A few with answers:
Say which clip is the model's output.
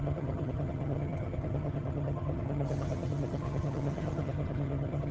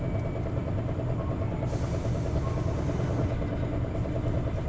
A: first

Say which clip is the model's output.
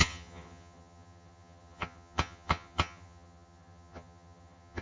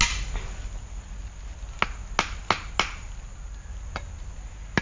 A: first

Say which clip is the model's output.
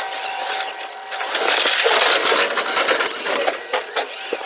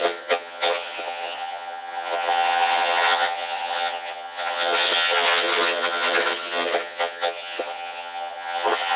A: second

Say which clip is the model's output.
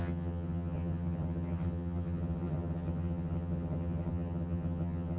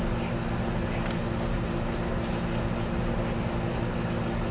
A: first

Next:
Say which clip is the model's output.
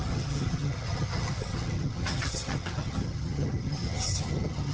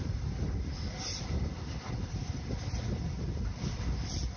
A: first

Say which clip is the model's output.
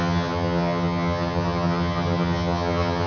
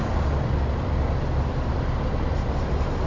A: first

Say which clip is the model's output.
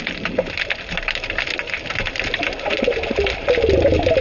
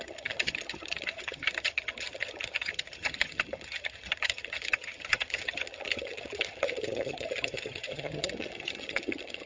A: second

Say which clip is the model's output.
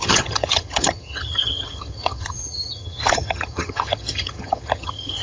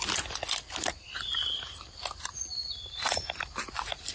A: first